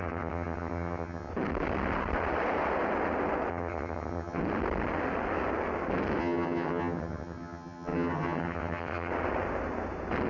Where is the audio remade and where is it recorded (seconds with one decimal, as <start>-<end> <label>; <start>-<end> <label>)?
0.0-1.3 remade; 1.3-3.5 recorded; 3.5-4.4 remade; 4.4-6.2 recorded; 6.2-9.1 remade; 9.1-10.3 recorded